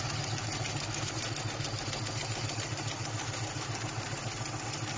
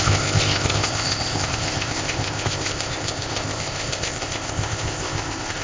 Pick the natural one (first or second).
first